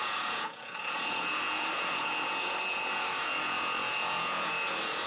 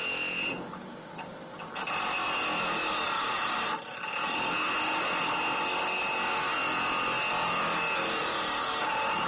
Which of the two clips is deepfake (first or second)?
first